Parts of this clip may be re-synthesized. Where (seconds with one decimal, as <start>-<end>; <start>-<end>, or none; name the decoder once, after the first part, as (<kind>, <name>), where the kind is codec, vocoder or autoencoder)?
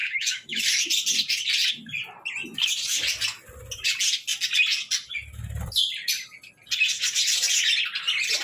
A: 0.0-0.6 (autoencoder, DAC-VAE)